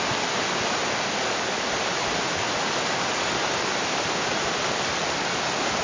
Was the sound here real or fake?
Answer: real